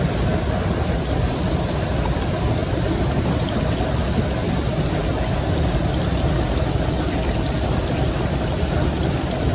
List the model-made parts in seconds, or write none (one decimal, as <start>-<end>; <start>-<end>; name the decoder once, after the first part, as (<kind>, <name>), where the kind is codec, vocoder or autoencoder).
none